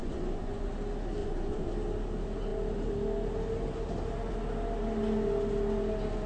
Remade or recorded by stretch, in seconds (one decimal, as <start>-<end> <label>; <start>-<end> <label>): 0.0-0.7 remade; 0.7-1.2 recorded; 1.2-1.7 remade; 1.7-6.3 recorded